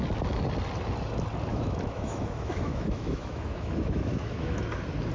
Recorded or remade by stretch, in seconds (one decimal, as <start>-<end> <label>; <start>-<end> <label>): 0.0-1.5 recorded; 1.5-4.6 remade; 4.6-5.1 recorded